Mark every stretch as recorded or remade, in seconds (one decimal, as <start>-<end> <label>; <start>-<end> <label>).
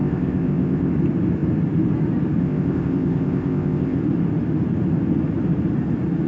0.0-0.9 remade; 0.9-2.4 recorded; 2.4-4.0 remade; 4.0-6.3 recorded